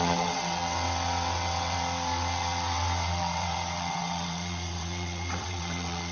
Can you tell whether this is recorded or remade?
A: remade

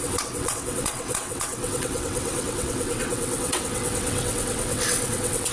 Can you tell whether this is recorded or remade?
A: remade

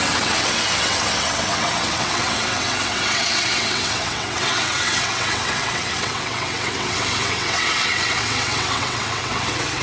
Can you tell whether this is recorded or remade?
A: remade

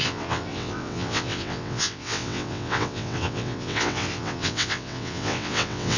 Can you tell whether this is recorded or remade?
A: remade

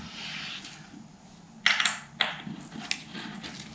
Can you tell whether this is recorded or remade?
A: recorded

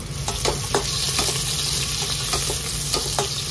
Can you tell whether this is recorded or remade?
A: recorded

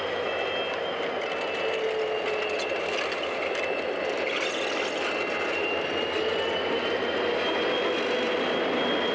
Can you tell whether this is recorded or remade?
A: recorded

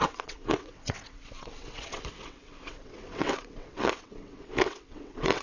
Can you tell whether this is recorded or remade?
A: remade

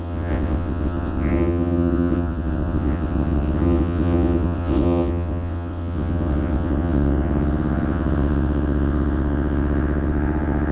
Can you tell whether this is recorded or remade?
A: remade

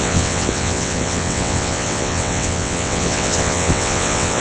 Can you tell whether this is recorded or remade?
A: remade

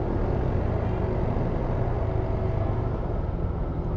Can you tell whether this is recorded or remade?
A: recorded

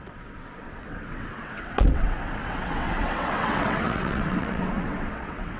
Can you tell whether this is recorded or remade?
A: remade